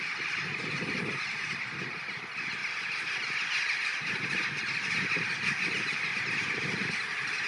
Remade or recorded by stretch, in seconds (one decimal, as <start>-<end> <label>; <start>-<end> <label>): 0.0-7.5 recorded